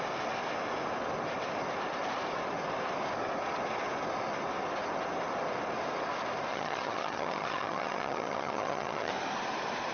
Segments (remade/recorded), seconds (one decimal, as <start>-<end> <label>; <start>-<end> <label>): 0.0-6.5 recorded; 6.5-9.1 remade; 9.1-9.9 recorded